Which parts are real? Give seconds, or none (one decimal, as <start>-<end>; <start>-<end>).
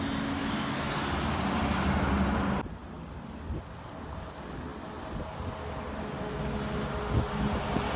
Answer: 0.0-0.4; 0.9-8.0